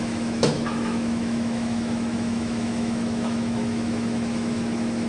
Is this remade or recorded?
remade